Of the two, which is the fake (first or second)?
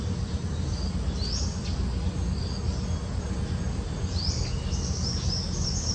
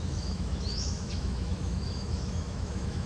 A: second